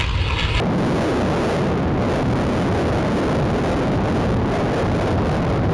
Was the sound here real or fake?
real